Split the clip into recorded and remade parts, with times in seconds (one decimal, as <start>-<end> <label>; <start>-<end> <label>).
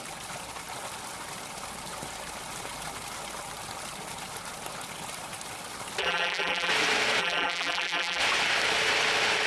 0.0-6.0 recorded; 6.0-6.7 remade; 6.7-7.2 recorded; 7.2-8.2 remade; 8.2-9.5 recorded